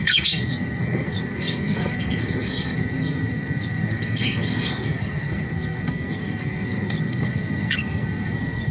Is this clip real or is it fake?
fake